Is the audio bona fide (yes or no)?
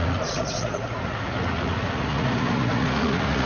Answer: no